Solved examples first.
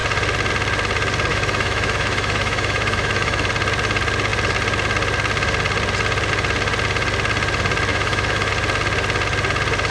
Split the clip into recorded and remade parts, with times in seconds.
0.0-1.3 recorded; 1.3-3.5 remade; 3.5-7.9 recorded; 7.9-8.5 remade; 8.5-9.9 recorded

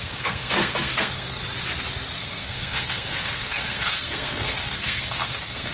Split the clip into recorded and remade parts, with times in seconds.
0.0-1.4 remade; 1.4-2.2 recorded; 2.2-5.7 remade

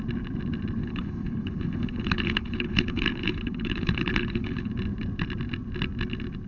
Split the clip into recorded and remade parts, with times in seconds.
0.0-0.8 recorded; 0.8-4.7 remade; 4.7-6.5 recorded

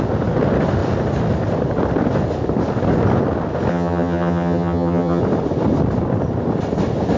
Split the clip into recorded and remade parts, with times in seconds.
0.0-3.7 recorded; 3.7-5.2 remade; 5.2-7.2 recorded

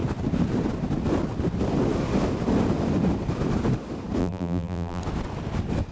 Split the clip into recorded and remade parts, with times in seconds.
0.0-4.2 recorded; 4.2-5.0 remade; 5.0-5.9 recorded

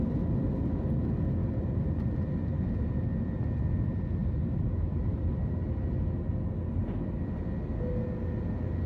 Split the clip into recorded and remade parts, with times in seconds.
0.0-1.4 recorded; 1.4-3.0 remade; 3.0-4.2 recorded; 4.2-5.5 remade; 5.5-6.6 recorded; 6.6-7.2 remade; 7.2-8.9 recorded

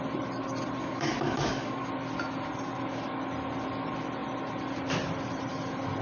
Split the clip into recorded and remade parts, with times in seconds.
0.0-0.8 recorded; 0.8-1.9 remade; 1.9-6.0 recorded